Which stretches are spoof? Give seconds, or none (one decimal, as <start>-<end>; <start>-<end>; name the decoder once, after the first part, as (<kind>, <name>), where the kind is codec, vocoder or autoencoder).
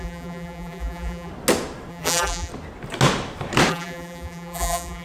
0.0-1.3 (vocoder, BigVGAN v2); 1.9-2.5; 3.7-5.0